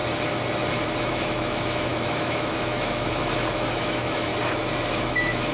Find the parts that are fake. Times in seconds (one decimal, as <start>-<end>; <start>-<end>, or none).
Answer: 1.0-4.3; 4.9-5.5